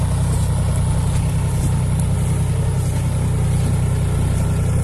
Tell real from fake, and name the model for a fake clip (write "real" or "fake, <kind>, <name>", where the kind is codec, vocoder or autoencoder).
real